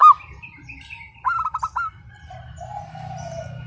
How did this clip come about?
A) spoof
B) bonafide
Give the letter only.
B